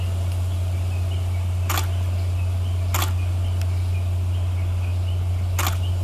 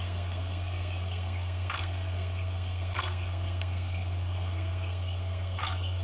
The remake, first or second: second